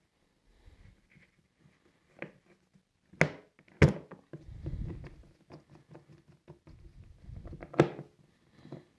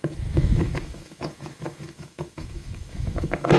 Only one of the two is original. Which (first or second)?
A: first